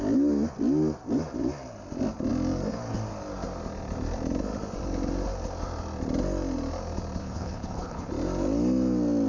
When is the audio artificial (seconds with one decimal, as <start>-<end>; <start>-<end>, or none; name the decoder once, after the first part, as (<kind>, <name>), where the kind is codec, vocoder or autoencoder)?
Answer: 7.2-8.1 (codec, HILCodec)